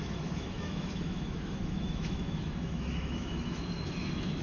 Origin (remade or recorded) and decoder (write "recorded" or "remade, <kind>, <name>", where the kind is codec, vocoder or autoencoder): remade, autoencoder, DAC-VAE